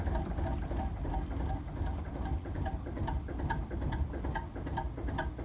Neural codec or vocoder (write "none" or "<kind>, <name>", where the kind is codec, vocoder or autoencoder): none